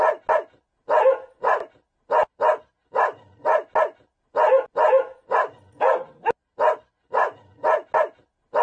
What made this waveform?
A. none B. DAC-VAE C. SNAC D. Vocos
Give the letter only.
A